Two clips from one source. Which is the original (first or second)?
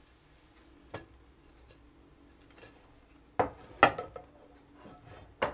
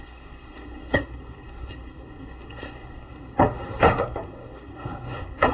first